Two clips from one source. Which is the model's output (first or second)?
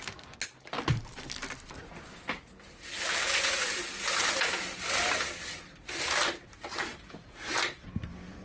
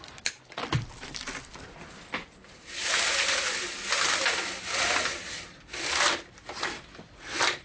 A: second